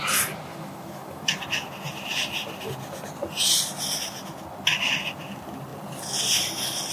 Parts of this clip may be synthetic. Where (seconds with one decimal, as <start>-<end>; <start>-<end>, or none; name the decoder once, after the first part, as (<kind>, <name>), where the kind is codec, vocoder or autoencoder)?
0.5-1.2 (autoencoder, DAC-VAE)